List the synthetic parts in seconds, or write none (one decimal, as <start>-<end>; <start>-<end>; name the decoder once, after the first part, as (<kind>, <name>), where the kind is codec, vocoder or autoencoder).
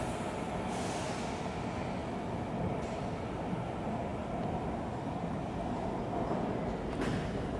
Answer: 2.0-2.5 (autoencoder, DAC-VAE)